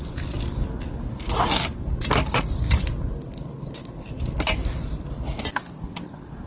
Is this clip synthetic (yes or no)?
no